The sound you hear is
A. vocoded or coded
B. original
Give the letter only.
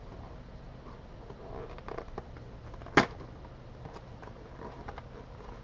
B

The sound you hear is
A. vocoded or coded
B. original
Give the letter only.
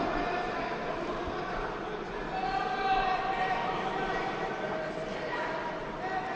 B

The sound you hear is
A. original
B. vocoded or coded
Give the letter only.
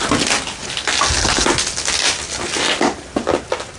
A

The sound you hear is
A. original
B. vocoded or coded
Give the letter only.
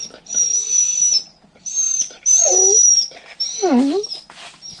A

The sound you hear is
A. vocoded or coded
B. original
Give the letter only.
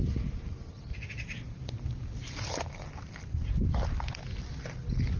B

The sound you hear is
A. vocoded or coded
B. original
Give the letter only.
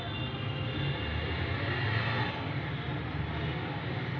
B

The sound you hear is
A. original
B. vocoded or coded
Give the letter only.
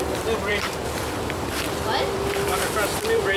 B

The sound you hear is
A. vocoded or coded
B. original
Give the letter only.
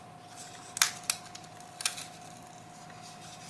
B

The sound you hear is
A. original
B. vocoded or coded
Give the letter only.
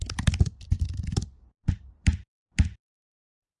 A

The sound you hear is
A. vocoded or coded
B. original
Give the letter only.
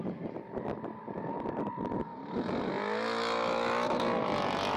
B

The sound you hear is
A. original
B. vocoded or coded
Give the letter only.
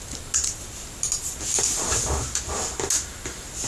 A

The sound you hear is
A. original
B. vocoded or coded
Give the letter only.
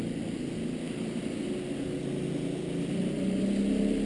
A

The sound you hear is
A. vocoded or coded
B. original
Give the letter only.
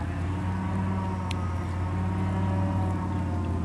B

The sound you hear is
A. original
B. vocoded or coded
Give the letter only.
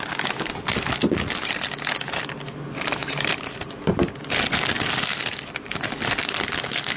A